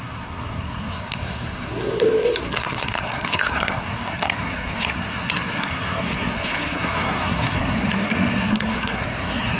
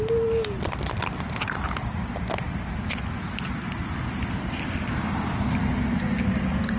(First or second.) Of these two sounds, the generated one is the first